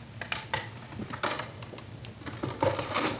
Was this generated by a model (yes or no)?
no